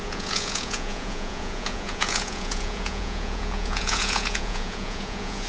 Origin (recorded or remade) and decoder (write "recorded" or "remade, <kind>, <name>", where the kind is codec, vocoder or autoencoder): remade, vocoder, Vocos